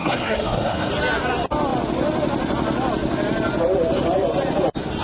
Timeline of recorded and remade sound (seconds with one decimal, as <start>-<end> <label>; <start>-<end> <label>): 0.0-0.9 remade; 0.9-5.0 recorded